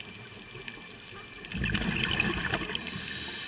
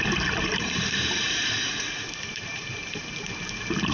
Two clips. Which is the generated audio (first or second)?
second